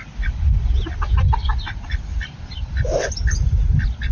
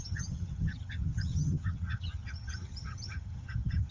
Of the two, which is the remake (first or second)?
second